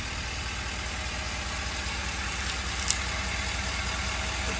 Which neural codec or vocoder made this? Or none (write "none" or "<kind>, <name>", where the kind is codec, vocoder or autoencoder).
none